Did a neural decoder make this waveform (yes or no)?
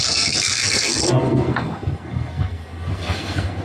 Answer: yes